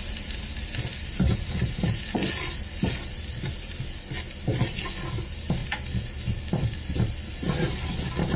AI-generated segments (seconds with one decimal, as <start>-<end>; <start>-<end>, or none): none